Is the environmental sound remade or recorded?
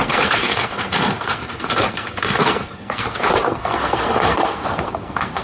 remade